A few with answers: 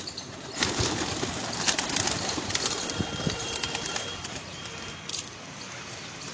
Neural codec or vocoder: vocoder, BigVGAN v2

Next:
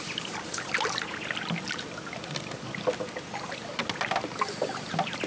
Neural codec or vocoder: none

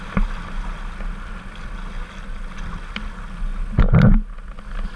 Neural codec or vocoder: none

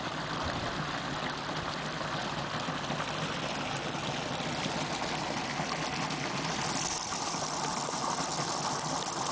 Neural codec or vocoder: none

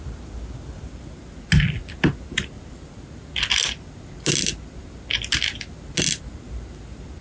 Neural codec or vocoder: none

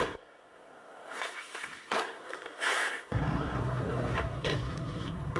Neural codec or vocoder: codec, SNAC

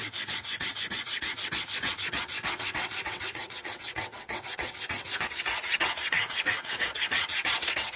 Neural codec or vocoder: vocoder, WaveNeXt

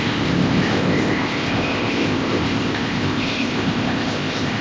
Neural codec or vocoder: codec, ZipCodec